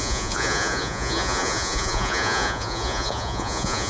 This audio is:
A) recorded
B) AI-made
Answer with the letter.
B